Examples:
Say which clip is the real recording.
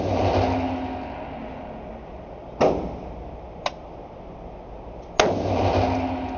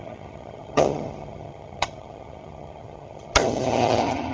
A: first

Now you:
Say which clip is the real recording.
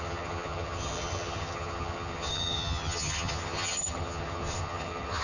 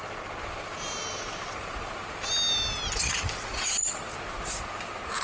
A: second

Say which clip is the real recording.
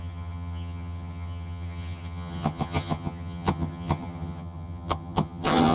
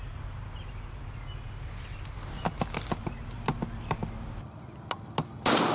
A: second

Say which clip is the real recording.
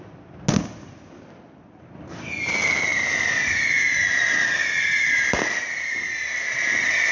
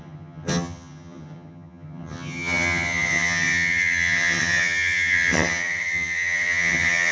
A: first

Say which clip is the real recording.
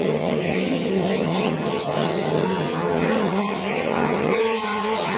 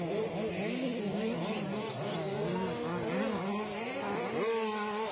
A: second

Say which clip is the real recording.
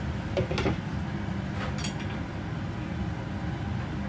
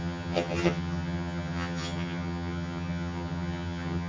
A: first